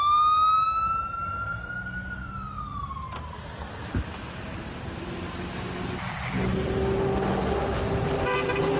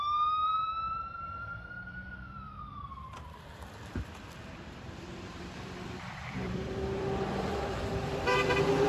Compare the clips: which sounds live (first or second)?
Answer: first